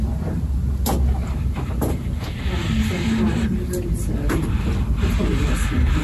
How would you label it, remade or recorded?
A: recorded